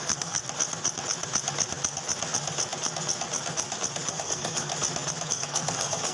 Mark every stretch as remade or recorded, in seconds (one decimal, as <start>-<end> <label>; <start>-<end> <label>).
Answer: 0.0-0.4 remade; 0.4-4.1 recorded; 4.1-4.7 remade; 4.7-5.3 recorded; 5.3-6.1 remade